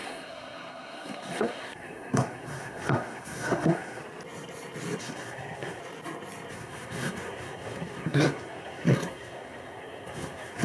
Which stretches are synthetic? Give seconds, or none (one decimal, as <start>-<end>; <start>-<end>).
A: 0.0-4.0; 5.0-5.8; 6.5-10.6